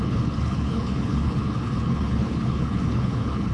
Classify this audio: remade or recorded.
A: remade